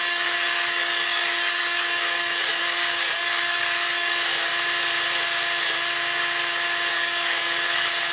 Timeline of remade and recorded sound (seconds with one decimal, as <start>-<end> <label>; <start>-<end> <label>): 0.0-4.5 remade; 4.5-6.9 recorded; 6.9-8.1 remade